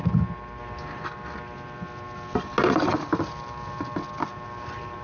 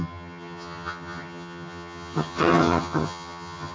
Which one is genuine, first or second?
first